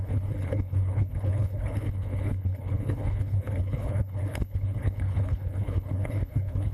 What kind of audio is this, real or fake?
fake